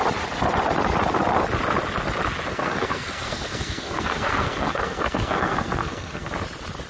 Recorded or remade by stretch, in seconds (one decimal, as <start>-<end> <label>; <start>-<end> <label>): 0.0-2.5 recorded; 2.5-6.3 remade; 6.3-6.9 recorded